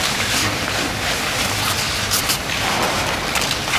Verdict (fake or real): fake